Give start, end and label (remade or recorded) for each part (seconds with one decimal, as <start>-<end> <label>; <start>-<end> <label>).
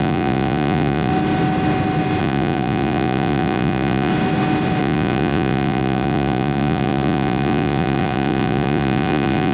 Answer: 0.0-1.1 remade; 1.1-2.2 recorded; 2.2-4.1 remade; 4.1-4.8 recorded; 4.8-9.5 remade